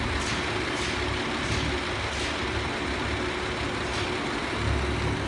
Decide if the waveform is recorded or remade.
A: recorded